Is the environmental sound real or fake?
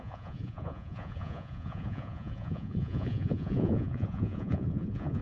fake